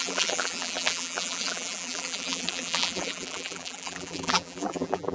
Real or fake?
fake